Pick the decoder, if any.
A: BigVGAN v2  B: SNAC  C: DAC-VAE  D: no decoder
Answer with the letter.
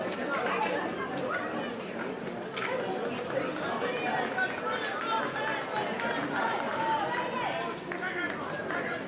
D